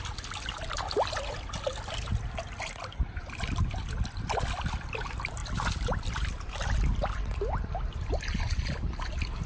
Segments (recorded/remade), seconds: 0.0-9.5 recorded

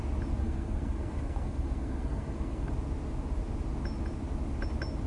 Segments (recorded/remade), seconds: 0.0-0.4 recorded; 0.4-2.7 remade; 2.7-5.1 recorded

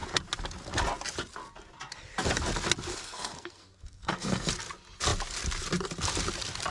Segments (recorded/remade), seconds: 0.0-2.9 recorded; 2.9-4.5 remade; 4.5-6.7 recorded